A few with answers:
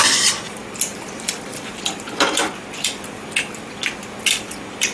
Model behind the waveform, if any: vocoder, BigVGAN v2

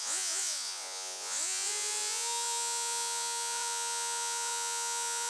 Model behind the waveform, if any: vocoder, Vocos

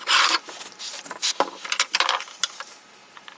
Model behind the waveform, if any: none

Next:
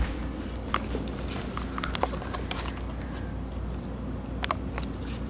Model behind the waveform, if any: none